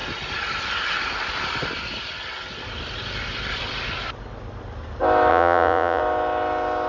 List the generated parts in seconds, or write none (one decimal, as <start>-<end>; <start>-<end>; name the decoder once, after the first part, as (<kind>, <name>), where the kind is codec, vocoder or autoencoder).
5.3-6.0 (vocoder, Vocos)